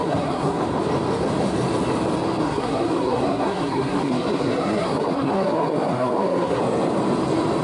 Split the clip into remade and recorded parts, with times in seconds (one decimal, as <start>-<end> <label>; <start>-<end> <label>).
0.0-0.6 remade; 0.6-2.4 recorded; 2.4-6.6 remade; 6.6-7.6 recorded